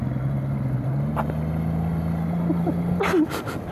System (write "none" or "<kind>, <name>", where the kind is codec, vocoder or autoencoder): none